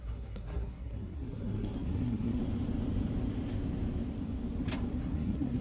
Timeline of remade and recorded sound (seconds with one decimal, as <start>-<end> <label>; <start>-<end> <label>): 0.0-2.4 remade; 2.4-4.9 recorded; 4.9-5.6 remade